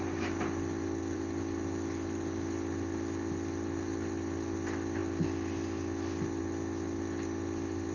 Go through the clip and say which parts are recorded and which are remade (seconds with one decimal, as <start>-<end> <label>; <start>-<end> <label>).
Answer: 0.0-7.9 recorded